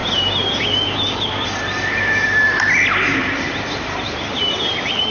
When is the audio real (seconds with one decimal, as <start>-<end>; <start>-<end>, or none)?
0.0-3.2; 4.3-5.1